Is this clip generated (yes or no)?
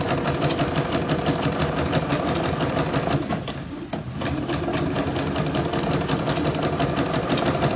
no